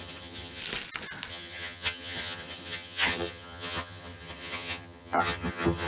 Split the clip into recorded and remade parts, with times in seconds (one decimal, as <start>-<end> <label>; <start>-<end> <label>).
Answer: 0.0-0.6 remade; 0.6-1.3 recorded; 1.3-5.9 remade